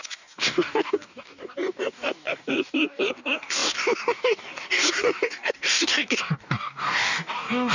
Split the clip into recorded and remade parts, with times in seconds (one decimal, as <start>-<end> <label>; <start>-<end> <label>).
0.0-7.7 remade